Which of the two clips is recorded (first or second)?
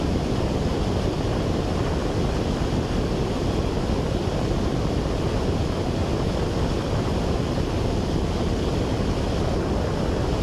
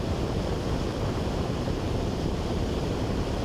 first